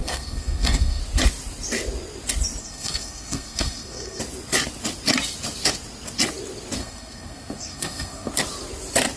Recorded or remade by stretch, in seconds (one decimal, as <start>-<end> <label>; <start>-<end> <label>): 0.0-1.0 remade; 1.0-2.6 recorded; 2.6-4.2 remade; 4.2-6.8 recorded; 6.8-8.3 remade; 8.3-9.2 recorded